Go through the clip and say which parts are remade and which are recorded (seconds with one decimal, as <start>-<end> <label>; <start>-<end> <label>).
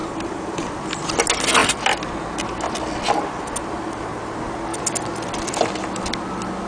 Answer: 0.0-0.7 remade; 0.7-6.7 recorded